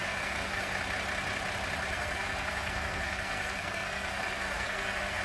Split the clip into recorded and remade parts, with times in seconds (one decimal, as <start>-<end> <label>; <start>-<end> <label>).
0.0-0.7 remade; 0.7-1.9 recorded; 1.9-5.2 remade